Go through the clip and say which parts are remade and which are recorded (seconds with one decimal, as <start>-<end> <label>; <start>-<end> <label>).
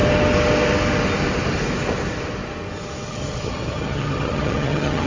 0.0-3.1 recorded; 3.1-5.1 remade